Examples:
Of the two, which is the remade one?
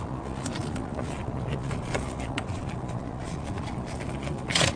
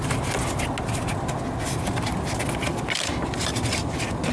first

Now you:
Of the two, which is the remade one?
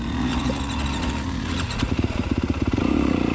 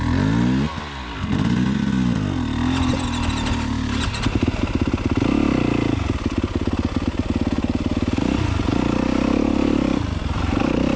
first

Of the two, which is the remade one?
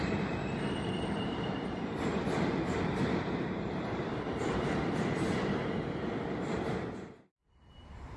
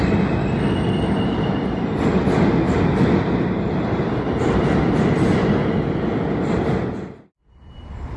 first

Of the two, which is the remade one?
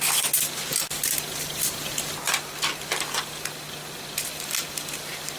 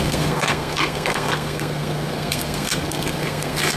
second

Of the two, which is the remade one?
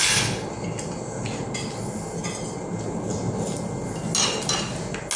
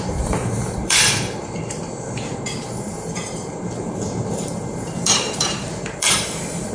second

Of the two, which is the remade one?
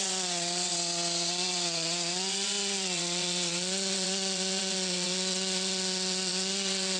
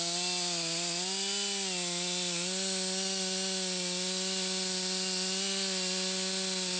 first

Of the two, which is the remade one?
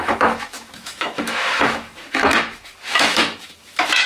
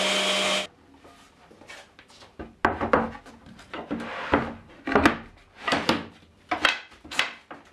first